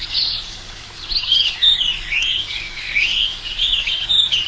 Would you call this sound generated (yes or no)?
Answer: yes